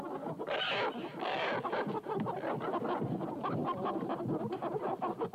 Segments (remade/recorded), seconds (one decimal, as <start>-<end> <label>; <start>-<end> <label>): 0.0-5.3 recorded